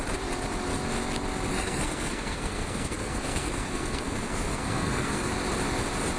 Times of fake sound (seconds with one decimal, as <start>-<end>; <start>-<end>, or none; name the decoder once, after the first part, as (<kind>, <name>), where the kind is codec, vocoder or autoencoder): 1.5-5.2 (codec, SNAC)